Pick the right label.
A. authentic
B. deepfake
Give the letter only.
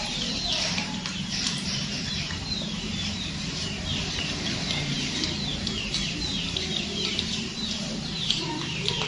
B